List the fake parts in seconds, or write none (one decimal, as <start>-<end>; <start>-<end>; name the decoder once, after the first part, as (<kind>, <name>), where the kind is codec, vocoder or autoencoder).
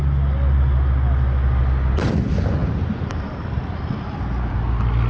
none